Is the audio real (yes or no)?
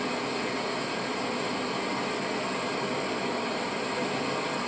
yes